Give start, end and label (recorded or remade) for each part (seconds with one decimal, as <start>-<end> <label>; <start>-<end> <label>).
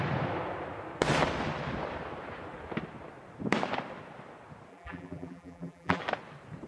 0.0-4.7 recorded; 4.7-6.0 remade; 6.0-6.7 recorded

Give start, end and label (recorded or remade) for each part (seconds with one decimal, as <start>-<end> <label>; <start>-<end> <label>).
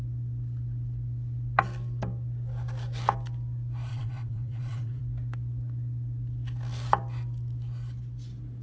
0.0-3.9 recorded; 3.9-5.0 remade; 5.0-8.6 recorded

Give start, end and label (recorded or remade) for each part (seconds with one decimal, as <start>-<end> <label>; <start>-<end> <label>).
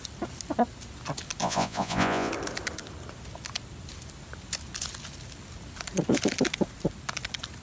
0.0-1.4 recorded; 1.4-2.3 remade; 2.3-7.6 recorded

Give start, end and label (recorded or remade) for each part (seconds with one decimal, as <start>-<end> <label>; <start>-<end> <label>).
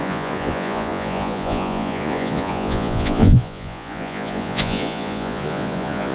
0.0-6.1 remade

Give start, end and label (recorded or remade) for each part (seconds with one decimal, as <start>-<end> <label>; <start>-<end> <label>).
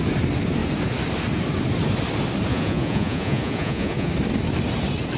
0.0-2.5 recorded; 2.5-4.1 remade; 4.1-5.2 recorded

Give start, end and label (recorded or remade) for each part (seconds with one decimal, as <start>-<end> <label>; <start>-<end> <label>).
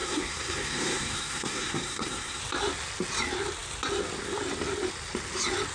0.0-2.4 remade; 2.4-5.7 recorded